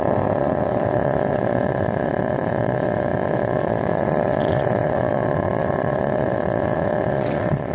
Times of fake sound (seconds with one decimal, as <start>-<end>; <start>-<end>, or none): 0.0-7.7